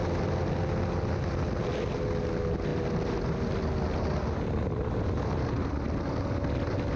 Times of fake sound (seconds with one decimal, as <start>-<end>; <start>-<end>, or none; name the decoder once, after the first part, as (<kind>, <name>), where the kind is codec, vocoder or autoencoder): none